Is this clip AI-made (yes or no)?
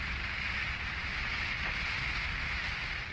no